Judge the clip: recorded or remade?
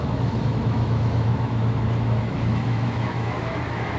remade